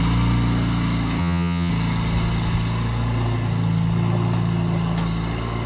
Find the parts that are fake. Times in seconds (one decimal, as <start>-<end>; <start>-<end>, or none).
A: 1.2-1.7